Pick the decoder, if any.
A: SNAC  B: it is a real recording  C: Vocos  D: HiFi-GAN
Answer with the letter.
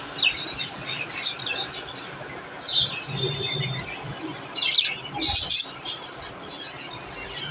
B